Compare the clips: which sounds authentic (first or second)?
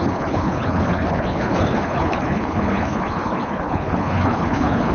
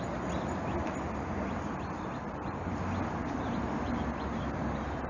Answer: second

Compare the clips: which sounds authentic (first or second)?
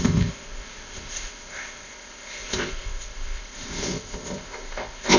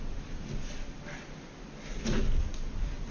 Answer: second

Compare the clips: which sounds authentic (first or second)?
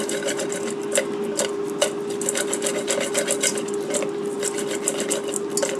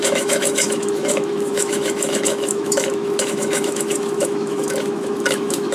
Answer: first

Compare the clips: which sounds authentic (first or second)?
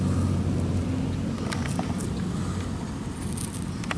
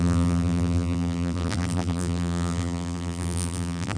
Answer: first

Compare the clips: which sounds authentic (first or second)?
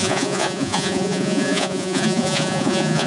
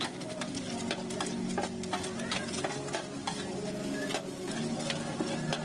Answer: second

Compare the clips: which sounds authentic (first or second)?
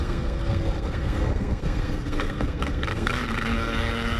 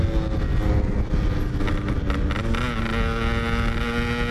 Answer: second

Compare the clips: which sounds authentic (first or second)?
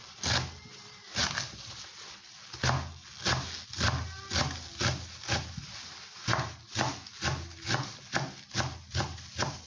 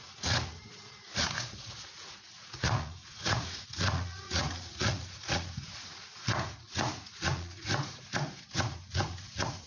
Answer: first